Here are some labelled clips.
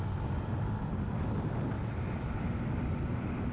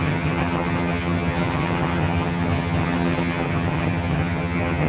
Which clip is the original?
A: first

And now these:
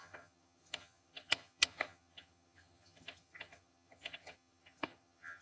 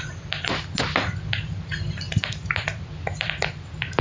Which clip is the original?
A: second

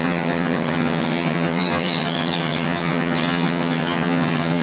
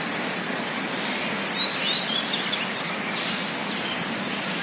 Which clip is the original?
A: second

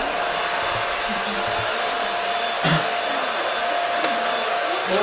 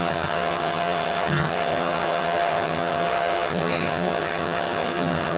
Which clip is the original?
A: first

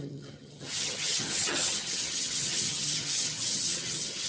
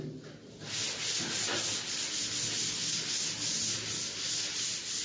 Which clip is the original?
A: second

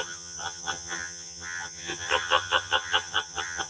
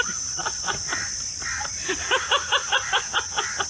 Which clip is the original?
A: second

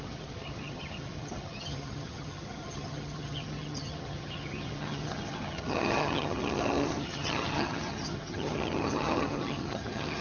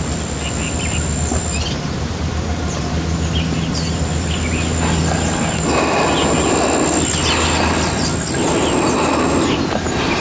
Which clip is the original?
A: second